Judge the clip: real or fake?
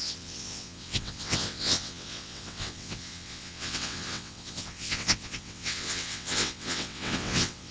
fake